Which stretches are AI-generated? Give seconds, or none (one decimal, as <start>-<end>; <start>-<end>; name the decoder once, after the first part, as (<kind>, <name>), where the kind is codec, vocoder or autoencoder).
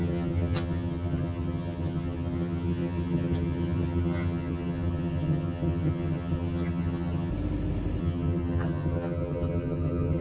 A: 0.0-7.3 (vocoder, HiFi-GAN); 8.0-10.2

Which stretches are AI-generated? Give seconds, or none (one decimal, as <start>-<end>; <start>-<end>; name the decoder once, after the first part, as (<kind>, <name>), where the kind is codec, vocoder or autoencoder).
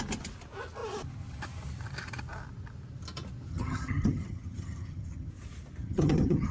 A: 3.5-5.3 (vocoder, HiFi-GAN); 5.8-6.5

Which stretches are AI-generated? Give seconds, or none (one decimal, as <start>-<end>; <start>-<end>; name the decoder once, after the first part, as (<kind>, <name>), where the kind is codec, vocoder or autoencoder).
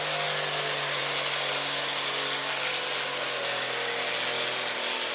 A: none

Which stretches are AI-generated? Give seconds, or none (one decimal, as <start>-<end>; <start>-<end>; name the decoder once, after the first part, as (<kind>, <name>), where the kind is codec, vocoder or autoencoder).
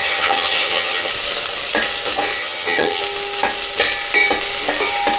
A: 0.0-1.1 (vocoder, HiFi-GAN); 2.4-3.0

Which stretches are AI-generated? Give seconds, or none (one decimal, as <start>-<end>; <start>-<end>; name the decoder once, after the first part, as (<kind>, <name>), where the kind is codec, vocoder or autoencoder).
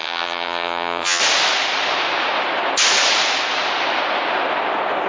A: 0.0-1.2 (vocoder, HiFi-GAN)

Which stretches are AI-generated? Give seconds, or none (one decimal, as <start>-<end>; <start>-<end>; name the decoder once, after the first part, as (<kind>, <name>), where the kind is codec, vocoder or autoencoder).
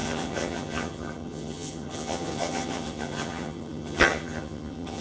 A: 0.0-5.0 (vocoder, HiFi-GAN)